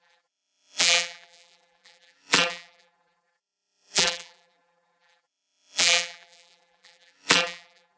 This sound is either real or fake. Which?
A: fake